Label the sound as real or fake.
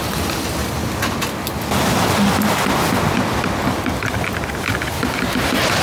real